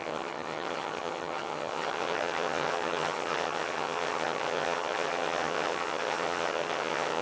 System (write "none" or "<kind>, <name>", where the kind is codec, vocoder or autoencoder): vocoder, HiFi-GAN